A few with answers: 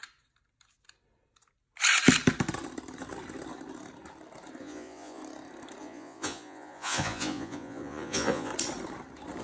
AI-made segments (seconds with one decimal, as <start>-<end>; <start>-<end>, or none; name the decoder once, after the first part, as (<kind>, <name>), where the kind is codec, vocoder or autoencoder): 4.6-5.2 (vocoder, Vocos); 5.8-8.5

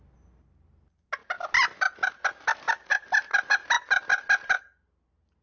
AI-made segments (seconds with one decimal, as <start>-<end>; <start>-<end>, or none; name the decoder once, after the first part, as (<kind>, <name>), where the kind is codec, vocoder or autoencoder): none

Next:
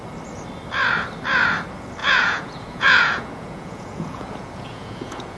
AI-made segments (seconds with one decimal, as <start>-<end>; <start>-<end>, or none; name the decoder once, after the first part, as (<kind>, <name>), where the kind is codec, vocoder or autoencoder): 2.0-5.4 (vocoder, Vocos)

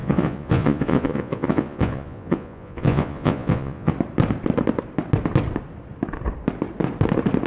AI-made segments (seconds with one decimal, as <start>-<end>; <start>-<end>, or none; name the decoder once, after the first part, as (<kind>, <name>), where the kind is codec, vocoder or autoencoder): 0.0-3.9 (vocoder, Vocos)

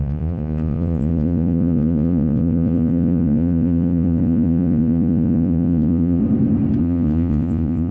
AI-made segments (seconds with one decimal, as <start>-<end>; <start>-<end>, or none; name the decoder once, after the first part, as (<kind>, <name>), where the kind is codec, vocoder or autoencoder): 0.0-6.2 (vocoder, Vocos); 6.8-7.9

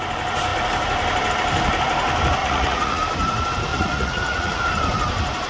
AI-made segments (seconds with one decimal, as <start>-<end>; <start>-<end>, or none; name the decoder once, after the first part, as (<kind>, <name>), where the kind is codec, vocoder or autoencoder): 2.4-3.0 (vocoder, Vocos); 3.7-4.6